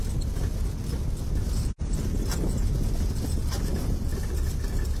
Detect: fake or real real